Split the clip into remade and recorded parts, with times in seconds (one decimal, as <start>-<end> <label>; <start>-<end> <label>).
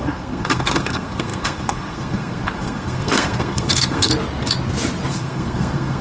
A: 0.0-4.1 remade; 4.1-5.1 recorded; 5.1-6.0 remade